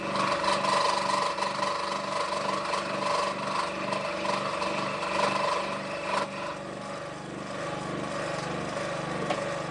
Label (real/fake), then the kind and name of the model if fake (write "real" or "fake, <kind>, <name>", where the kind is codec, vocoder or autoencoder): real